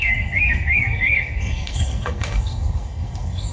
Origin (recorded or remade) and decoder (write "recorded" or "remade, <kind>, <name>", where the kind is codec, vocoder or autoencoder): remade, codec, SNAC